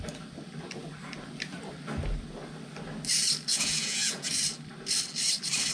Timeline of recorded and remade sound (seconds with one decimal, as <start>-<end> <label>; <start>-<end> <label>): 0.0-3.5 recorded; 3.5-4.3 remade; 4.3-5.7 recorded

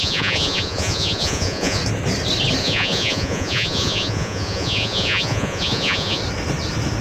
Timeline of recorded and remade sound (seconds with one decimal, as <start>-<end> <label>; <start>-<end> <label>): 0.0-1.8 remade; 1.8-2.6 recorded; 2.6-6.2 remade; 6.2-7.0 recorded

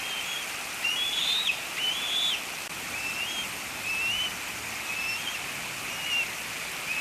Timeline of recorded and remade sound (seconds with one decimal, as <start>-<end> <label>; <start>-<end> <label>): 0.0-7.0 recorded

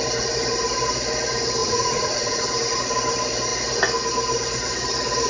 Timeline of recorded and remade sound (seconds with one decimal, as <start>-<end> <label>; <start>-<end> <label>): 0.0-1.6 recorded; 1.6-2.4 remade; 2.4-5.3 recorded

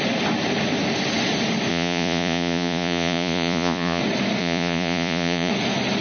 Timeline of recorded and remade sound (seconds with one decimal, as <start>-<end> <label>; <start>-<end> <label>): 0.0-1.7 recorded; 1.7-4.0 remade; 4.0-4.4 recorded; 4.4-5.5 remade; 5.5-6.0 recorded